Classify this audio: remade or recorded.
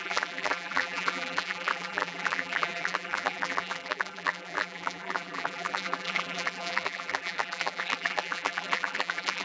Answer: remade